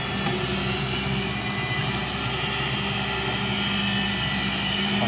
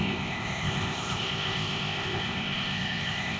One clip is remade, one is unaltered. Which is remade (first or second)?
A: second